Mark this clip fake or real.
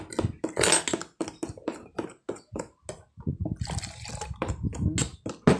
real